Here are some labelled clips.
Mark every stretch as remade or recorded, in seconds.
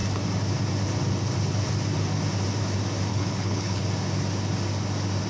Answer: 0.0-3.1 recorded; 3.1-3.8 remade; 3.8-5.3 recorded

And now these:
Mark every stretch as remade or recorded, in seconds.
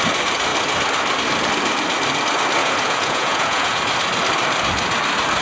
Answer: 0.0-2.6 recorded; 2.6-3.8 remade; 3.8-5.4 recorded